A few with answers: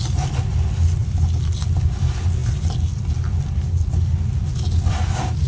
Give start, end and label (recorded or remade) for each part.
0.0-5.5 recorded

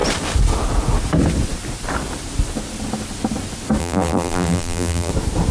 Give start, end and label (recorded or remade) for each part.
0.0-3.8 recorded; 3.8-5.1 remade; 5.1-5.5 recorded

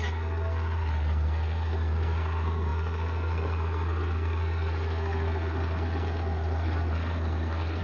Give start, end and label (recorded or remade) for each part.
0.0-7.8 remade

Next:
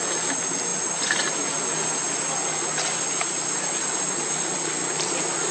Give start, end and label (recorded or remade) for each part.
0.0-5.5 recorded

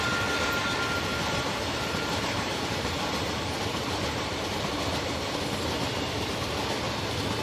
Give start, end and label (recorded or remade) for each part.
0.0-1.1 recorded; 1.1-5.5 remade; 5.5-7.4 recorded

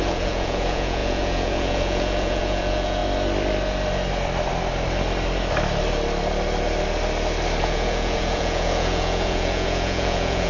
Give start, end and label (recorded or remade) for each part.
0.0-3.0 remade; 3.0-7.6 recorded; 7.6-10.5 remade